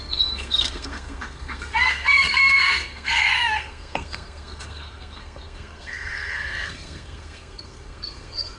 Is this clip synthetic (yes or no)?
yes